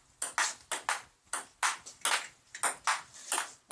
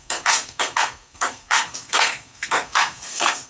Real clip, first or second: first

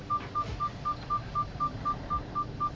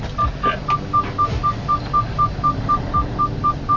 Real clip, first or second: second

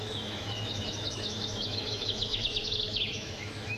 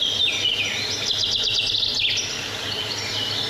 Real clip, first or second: second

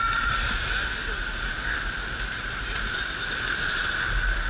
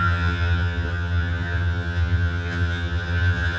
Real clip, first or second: first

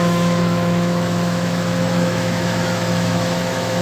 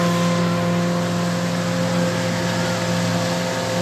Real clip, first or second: second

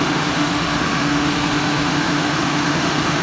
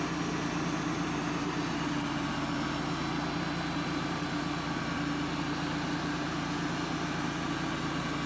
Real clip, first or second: second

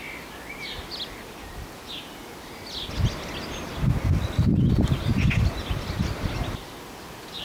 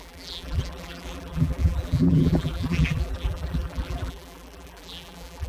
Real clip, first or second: first